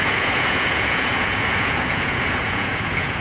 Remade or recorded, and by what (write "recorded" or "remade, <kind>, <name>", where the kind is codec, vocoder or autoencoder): remade, vocoder, Vocos